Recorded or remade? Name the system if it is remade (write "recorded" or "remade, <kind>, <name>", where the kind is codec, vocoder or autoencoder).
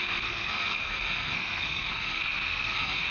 remade, codec, SNAC